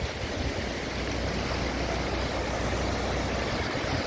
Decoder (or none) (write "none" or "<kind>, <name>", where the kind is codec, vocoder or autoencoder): none